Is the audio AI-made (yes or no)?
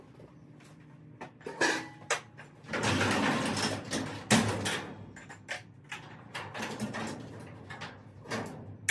no